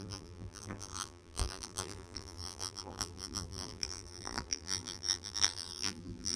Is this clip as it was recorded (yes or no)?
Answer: no